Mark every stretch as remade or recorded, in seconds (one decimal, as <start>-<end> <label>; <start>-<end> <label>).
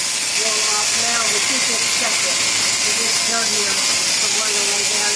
0.0-5.2 recorded